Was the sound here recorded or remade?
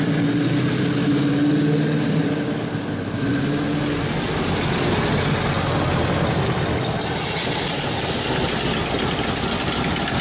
recorded